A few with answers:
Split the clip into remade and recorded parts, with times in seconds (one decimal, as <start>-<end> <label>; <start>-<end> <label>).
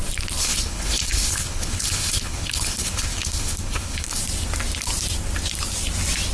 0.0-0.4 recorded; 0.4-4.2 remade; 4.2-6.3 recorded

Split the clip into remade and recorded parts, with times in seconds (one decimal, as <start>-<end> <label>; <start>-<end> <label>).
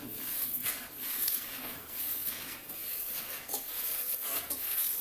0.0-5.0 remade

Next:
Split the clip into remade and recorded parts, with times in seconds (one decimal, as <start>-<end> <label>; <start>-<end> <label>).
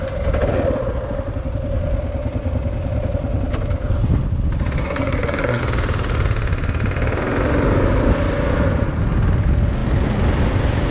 0.0-4.8 recorded; 4.8-5.6 remade; 5.6-10.9 recorded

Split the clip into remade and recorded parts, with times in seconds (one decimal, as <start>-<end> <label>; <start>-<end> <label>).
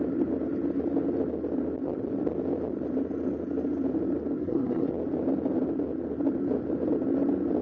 0.0-4.4 recorded; 4.4-4.9 remade; 4.9-7.6 recorded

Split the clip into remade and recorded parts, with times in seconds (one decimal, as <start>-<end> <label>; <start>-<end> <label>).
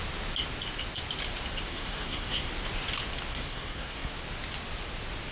0.0-1.7 recorded; 1.7-2.5 remade; 2.5-3.3 recorded; 3.3-4.1 remade; 4.1-5.3 recorded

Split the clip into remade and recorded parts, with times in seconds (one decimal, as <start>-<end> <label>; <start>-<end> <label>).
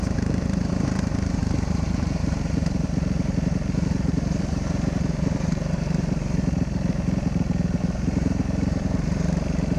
0.0-9.8 remade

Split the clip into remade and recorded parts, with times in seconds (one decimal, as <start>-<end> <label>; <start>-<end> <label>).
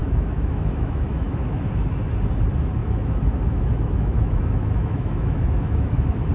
0.0-1.7 remade; 1.7-2.8 recorded; 2.8-6.3 remade